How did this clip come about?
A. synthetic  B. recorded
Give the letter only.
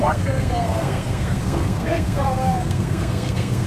A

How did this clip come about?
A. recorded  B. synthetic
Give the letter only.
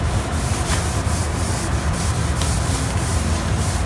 A